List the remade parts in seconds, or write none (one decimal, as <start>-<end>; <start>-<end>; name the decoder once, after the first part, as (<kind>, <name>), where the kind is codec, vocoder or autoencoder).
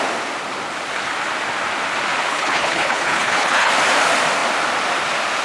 2.3-3.7 (codec, HILCodec)